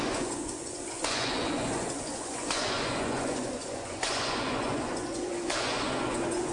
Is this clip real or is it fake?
fake